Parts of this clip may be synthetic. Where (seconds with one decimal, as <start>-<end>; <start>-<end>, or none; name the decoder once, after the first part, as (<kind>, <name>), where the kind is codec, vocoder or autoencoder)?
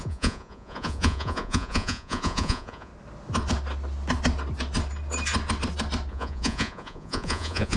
0.0-2.9 (vocoder, Vocos); 6.1-7.8